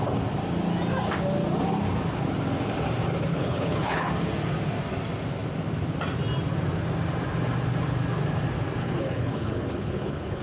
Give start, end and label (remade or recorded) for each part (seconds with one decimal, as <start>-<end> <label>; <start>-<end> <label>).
0.0-3.3 recorded; 3.3-4.1 remade; 4.1-8.8 recorded; 8.8-10.4 remade